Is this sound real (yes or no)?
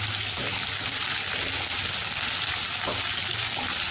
yes